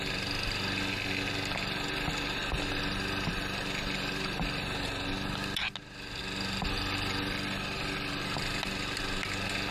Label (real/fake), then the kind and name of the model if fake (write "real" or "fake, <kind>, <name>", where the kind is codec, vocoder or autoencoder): real